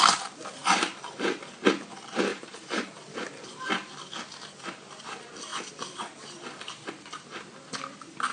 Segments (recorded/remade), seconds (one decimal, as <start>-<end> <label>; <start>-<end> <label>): 0.0-0.6 recorded; 0.6-1.4 remade; 1.4-2.3 recorded; 2.3-2.9 remade; 2.9-8.3 recorded